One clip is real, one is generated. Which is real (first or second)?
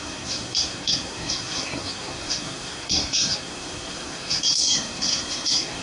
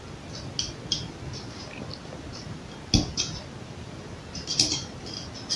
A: second